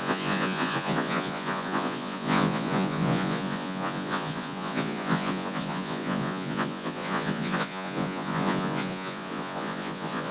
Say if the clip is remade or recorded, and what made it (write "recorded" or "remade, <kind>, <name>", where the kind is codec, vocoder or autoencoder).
remade, vocoder, Vocos